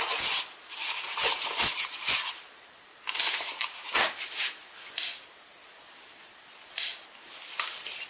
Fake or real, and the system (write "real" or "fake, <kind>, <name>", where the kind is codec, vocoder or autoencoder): real